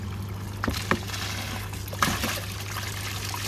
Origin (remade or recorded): recorded